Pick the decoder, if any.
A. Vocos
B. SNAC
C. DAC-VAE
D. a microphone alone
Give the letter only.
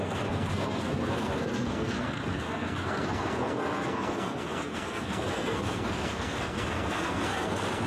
B